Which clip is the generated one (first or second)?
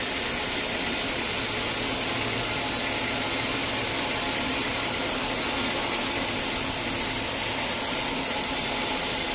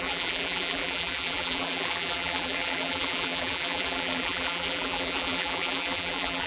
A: second